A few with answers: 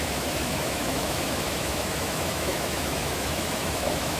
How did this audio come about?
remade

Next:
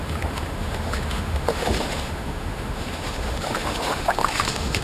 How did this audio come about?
remade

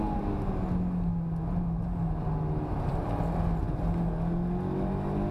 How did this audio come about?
recorded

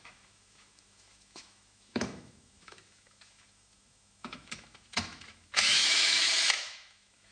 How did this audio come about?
remade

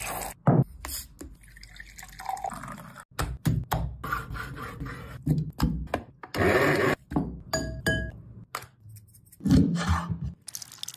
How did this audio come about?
recorded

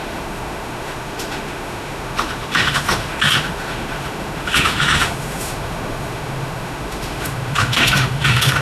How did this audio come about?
remade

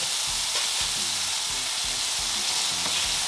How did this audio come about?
recorded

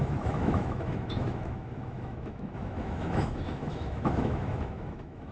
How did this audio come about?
remade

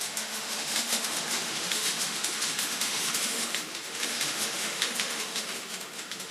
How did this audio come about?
remade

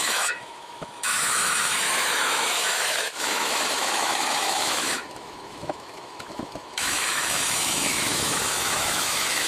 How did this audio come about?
remade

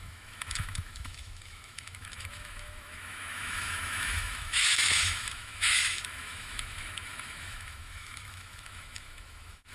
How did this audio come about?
remade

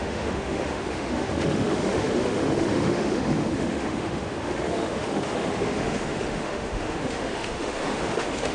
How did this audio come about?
remade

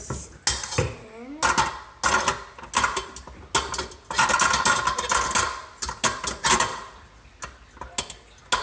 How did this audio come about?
recorded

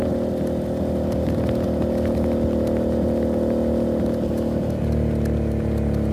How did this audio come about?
recorded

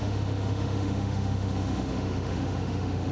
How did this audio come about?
remade